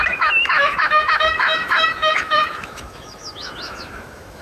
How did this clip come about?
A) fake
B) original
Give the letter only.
A